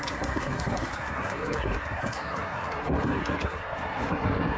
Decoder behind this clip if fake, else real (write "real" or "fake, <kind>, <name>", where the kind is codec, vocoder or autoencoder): fake, codec, SNAC